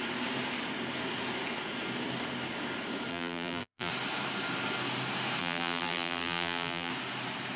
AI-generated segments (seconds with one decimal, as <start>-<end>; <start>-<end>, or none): 3.1-3.9; 5.4-6.9